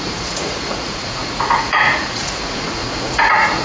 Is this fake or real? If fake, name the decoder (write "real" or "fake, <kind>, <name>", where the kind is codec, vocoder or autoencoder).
fake, vocoder, Vocos